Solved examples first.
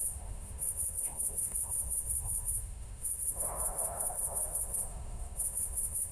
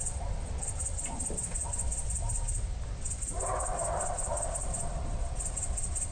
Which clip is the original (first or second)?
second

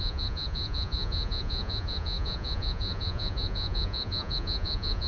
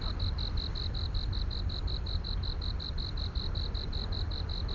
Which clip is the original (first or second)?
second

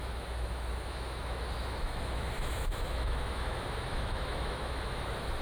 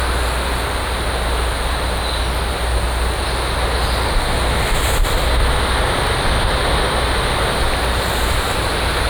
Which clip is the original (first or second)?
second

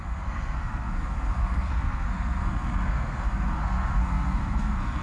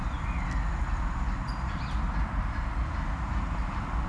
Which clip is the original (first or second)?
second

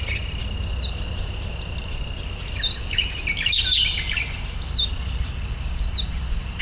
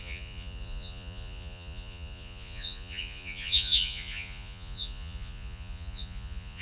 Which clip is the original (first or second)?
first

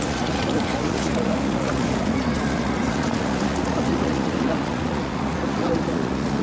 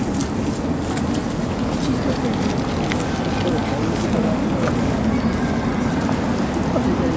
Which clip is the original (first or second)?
second